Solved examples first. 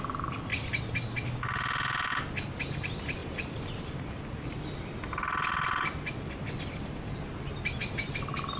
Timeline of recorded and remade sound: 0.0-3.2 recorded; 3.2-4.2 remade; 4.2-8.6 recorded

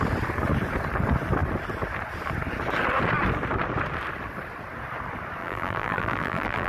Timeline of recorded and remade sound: 0.0-5.4 recorded; 5.4-6.7 remade